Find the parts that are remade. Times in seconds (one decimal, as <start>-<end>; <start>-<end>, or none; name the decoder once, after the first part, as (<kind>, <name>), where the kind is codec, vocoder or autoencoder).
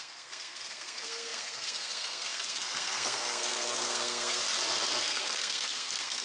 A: 0.0-4.4 (codec, SNAC); 5.0-6.2